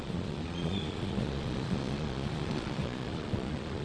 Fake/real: fake